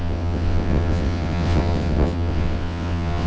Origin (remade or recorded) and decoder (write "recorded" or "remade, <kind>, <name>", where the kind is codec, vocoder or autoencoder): remade, vocoder, WaveNeXt